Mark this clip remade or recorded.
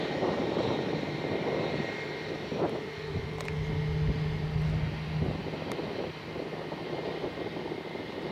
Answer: recorded